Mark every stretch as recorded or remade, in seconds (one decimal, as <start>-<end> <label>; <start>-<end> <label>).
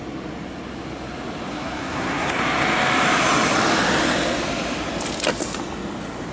0.0-1.5 recorded; 1.5-2.4 remade; 2.4-6.3 recorded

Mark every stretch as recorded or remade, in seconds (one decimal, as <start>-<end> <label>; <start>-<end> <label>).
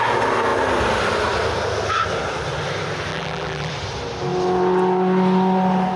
0.0-3.1 recorded; 3.1-3.7 remade; 3.7-6.0 recorded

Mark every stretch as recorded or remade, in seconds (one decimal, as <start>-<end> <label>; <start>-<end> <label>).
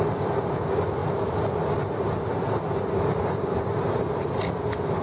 0.0-5.0 recorded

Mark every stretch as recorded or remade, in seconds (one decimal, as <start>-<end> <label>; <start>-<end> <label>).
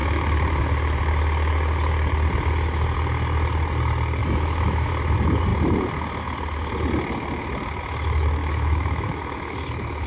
0.0-0.6 remade; 0.6-4.2 recorded; 4.2-4.9 remade; 4.9-8.4 recorded; 8.4-10.1 remade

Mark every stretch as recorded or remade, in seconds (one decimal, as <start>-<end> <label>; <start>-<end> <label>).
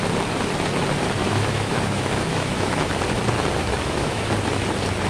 0.0-1.2 recorded; 1.2-2.9 remade; 2.9-3.6 recorded; 3.6-4.3 remade; 4.3-5.1 recorded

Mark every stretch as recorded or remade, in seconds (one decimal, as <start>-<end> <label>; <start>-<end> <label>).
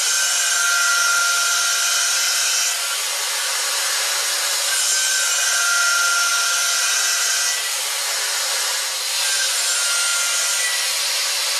0.0-11.6 recorded